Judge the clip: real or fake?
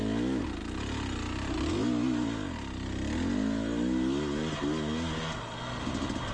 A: real